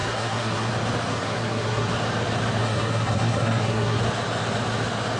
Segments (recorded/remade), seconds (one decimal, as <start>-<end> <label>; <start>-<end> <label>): 0.0-0.7 remade; 0.7-1.1 recorded; 1.1-1.9 remade; 1.9-2.6 recorded; 2.6-4.0 remade; 4.0-5.2 recorded